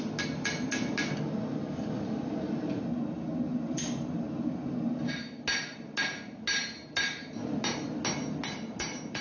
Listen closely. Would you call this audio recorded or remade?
recorded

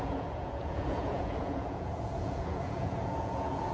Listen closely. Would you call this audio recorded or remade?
remade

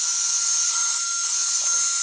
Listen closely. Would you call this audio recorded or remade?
recorded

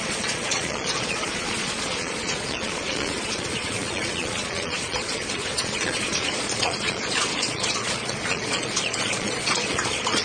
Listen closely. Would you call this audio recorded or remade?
remade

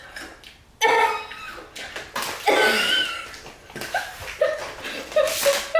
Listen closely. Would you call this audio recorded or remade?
recorded